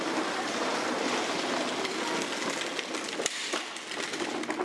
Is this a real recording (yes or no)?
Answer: yes